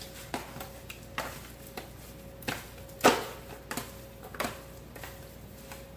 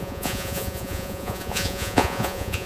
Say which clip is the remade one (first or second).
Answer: second